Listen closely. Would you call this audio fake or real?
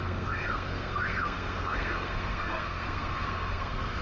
fake